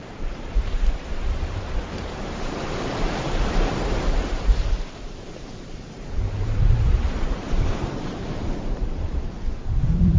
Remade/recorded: remade